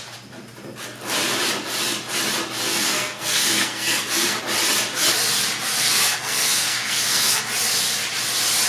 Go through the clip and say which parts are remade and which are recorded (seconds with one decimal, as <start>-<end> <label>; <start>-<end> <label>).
0.0-2.7 recorded; 2.7-4.4 remade; 4.4-5.7 recorded; 5.7-7.4 remade; 7.4-8.7 recorded